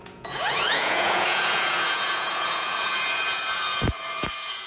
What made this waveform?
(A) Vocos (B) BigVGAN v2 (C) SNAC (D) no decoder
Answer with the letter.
A